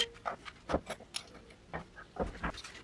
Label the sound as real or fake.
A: real